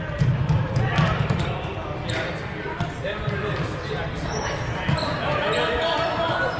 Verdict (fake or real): real